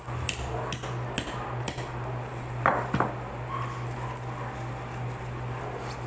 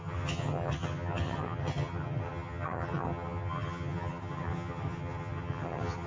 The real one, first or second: first